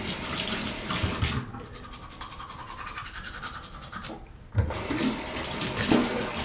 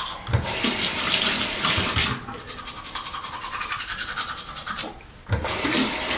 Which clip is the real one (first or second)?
first